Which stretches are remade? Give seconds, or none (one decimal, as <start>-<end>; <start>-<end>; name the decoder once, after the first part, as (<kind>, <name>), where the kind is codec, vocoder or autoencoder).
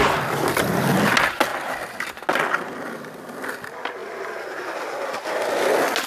4.0-5.4 (vocoder, BigVGAN v2)